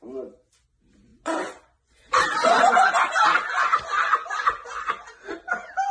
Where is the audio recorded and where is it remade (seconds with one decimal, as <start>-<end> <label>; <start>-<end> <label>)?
0.0-1.1 recorded; 1.1-2.7 remade; 2.7-5.9 recorded